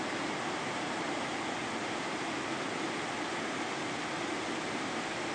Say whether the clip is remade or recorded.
recorded